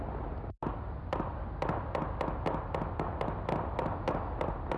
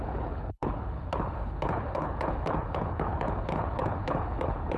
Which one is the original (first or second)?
first